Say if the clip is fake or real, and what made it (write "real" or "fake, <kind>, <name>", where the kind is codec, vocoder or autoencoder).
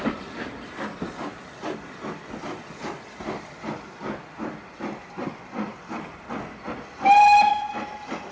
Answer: real